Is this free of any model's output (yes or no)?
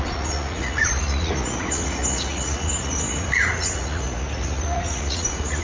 no